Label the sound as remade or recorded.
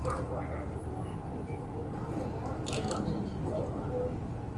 recorded